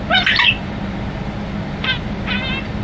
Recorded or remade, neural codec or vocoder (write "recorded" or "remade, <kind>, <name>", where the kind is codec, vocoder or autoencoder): recorded